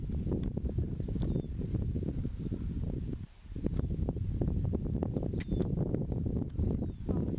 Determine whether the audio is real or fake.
real